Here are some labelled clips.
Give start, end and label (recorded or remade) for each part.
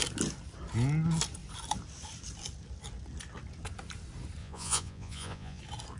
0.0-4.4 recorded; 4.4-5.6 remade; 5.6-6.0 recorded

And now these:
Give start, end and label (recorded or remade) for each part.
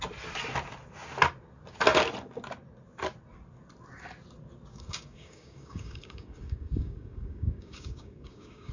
0.0-4.7 recorded; 4.7-8.7 remade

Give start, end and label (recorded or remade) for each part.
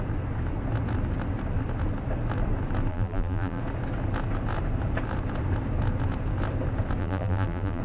0.0-2.9 recorded; 2.9-3.6 remade; 3.6-7.0 recorded; 7.0-7.8 remade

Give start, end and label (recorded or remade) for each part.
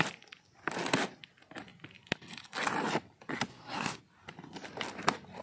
0.0-3.5 recorded; 3.5-4.0 remade; 4.0-5.4 recorded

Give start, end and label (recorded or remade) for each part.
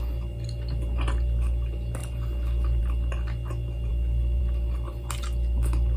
0.0-6.0 recorded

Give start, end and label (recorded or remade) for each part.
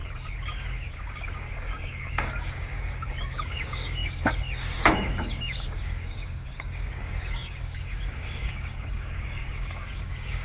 0.0-10.4 remade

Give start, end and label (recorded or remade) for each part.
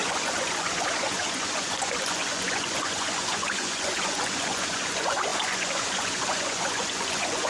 0.0-7.5 remade